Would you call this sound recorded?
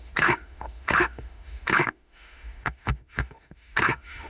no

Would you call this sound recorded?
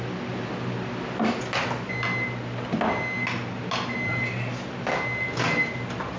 yes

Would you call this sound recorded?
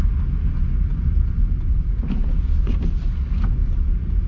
yes